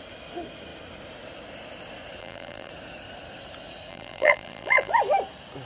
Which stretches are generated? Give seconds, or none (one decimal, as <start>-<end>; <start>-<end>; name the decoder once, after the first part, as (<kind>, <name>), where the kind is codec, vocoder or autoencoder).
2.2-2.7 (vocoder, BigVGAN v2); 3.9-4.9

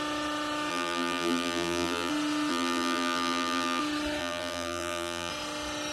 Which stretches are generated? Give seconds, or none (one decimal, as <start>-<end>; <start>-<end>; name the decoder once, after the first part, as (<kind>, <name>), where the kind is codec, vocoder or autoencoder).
0.7-2.1 (vocoder, BigVGAN v2); 2.5-3.8; 4.2-5.3

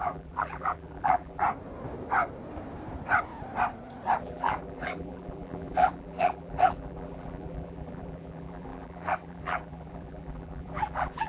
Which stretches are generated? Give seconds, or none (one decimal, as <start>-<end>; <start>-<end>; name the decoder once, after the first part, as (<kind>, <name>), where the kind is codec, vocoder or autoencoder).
0.0-1.4 (vocoder, BigVGAN v2); 4.2-11.3